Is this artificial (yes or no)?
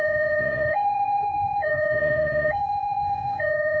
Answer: yes